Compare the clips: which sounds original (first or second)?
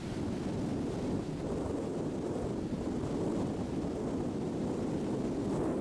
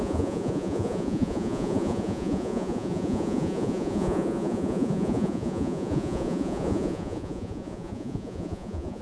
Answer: first